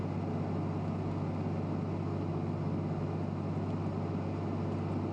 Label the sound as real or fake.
real